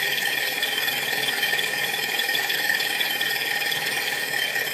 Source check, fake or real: fake